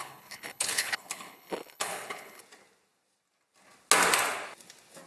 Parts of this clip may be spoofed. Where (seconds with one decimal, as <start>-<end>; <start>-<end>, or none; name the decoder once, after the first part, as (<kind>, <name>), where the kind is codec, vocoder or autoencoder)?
0.0-2.4 (codec, HILCodec)